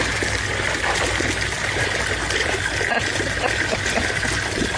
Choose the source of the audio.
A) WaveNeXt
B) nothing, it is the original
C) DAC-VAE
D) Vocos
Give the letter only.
B